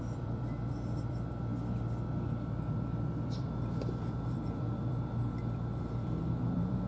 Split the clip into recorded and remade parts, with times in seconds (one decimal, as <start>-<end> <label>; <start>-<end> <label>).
0.0-1.5 remade; 1.5-2.7 recorded; 2.7-6.9 remade